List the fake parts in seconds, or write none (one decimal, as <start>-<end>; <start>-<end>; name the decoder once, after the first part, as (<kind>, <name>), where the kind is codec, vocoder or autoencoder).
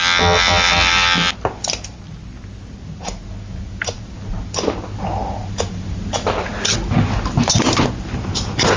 none